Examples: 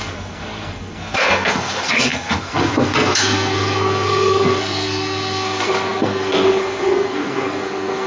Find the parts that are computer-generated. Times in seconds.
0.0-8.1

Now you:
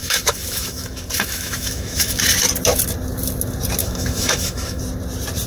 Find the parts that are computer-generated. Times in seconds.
0.0-2.2; 3.8-4.8